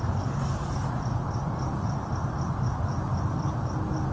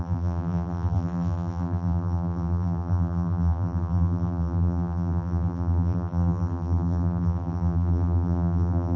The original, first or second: first